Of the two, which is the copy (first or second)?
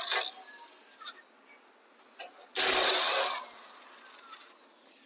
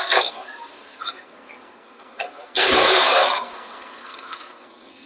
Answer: second